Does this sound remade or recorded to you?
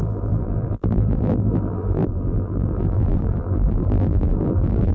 remade